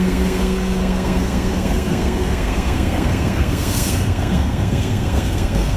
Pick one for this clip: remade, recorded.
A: remade